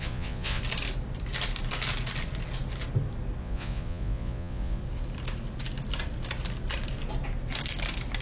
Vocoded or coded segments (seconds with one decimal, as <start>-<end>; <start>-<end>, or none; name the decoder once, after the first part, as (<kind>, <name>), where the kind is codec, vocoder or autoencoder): 0.0-0.6 (vocoder, Vocos); 3.4-4.8